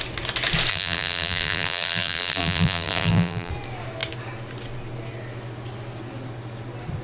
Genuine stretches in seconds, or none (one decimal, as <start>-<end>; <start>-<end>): 0.0-0.7; 3.5-7.0